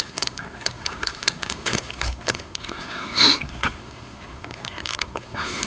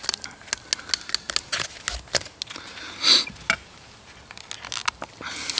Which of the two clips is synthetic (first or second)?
first